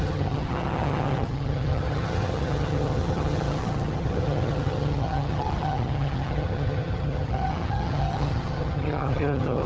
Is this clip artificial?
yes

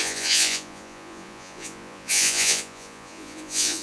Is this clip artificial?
yes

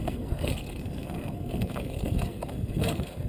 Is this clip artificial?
yes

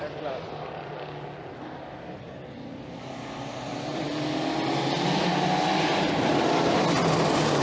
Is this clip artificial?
no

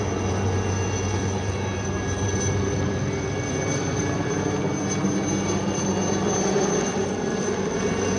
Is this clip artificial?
no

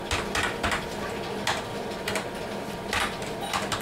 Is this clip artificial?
no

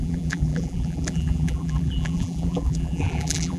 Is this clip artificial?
yes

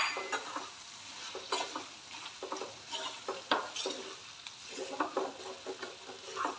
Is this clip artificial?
no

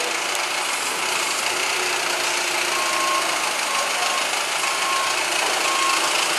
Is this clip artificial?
no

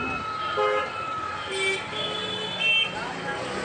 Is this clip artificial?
no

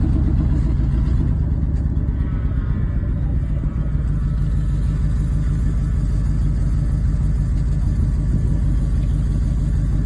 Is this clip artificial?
no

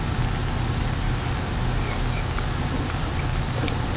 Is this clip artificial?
no